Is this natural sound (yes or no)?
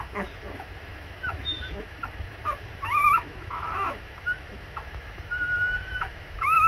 no